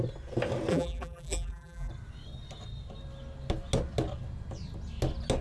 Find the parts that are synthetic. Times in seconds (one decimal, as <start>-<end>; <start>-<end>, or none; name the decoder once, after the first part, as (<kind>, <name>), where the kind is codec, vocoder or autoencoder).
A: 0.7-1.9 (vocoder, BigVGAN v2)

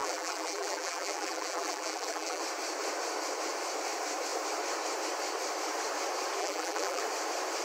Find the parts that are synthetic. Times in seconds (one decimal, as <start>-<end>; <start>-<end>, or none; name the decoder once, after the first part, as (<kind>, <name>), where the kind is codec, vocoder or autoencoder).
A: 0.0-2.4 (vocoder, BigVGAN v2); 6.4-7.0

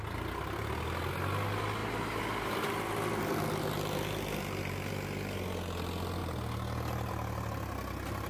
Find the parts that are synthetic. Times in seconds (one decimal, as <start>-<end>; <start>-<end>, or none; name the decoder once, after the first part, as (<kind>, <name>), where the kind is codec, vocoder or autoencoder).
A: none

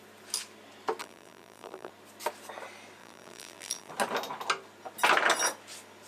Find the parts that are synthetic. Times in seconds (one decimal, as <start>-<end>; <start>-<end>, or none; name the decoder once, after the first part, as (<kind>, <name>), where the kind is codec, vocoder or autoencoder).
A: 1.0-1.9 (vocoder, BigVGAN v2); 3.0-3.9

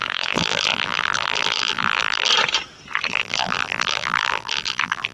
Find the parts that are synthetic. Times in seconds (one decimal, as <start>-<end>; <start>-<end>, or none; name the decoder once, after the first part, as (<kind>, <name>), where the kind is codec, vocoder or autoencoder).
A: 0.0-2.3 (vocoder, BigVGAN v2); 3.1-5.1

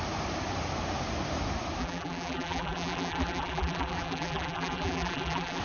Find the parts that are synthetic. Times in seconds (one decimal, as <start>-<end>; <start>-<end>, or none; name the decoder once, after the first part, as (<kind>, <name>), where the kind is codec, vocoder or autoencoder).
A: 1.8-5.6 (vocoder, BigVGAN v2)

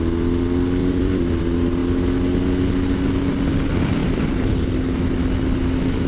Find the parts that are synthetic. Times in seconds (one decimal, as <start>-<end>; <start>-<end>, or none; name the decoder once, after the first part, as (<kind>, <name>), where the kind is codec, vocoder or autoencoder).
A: 0.8-1.4 (vocoder, BigVGAN v2)

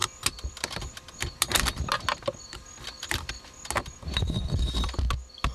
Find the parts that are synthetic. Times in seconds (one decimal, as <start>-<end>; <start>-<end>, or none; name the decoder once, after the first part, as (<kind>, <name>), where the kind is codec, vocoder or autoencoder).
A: none